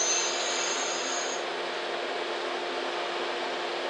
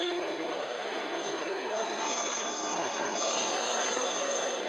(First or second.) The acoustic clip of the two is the first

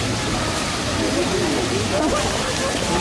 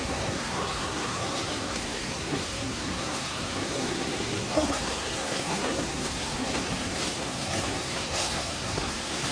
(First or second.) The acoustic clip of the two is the first